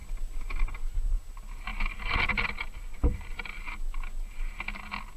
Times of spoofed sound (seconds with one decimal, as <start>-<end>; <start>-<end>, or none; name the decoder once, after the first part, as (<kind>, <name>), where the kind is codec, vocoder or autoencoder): none